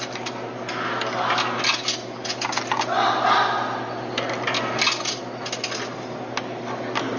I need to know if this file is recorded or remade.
recorded